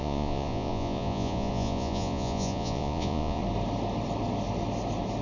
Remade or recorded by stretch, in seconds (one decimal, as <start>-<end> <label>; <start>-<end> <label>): 0.0-3.4 remade; 3.4-5.2 recorded